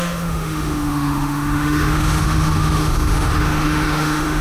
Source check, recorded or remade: remade